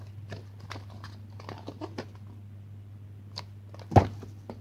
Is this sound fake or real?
real